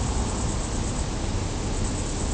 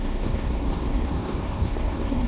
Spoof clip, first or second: second